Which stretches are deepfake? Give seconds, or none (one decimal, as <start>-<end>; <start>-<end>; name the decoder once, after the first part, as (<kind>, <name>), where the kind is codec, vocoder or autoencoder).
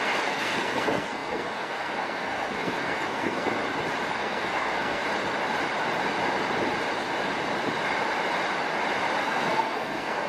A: 0.0-3.6 (codec, SNAC); 4.1-5.0; 9.2-10.3